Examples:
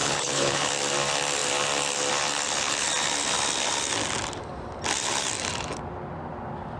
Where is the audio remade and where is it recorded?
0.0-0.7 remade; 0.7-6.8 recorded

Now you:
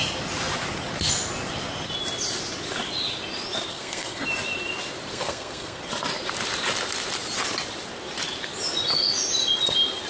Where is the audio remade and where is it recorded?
0.0-3.7 recorded; 3.7-4.2 remade; 4.2-5.1 recorded; 5.1-5.8 remade; 5.8-10.1 recorded

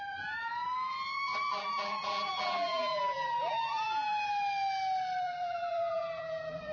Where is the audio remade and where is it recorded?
0.0-0.5 remade; 0.5-1.4 recorded; 1.4-4.1 remade; 4.1-5.2 recorded; 5.2-6.7 remade

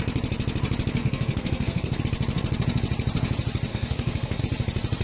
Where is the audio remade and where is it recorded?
0.0-1.0 recorded; 1.0-2.0 remade; 2.0-3.7 recorded; 3.7-4.4 remade; 4.4-5.0 recorded

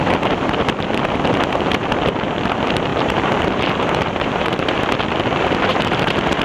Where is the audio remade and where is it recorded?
0.0-2.9 recorded; 2.9-4.9 remade; 4.9-5.7 recorded; 5.7-6.4 remade

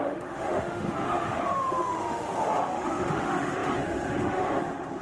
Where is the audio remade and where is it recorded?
0.0-5.0 remade

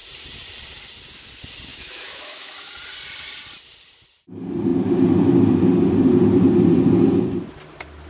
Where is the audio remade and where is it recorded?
0.0-1.7 recorded; 1.7-2.7 remade; 2.7-8.1 recorded

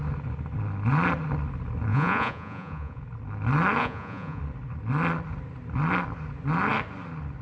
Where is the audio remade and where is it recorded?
0.0-1.9 recorded; 1.9-3.0 remade; 3.0-3.8 recorded; 3.8-4.4 remade; 4.4-7.4 recorded